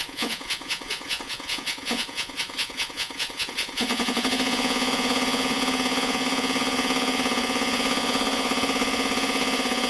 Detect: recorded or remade remade